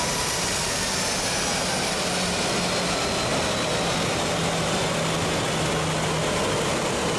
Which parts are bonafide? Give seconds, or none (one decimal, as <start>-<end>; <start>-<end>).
0.0-7.2